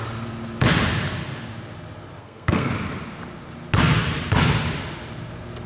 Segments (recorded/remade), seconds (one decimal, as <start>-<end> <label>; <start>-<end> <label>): 0.0-2.2 recorded; 2.2-2.7 remade; 2.7-5.7 recorded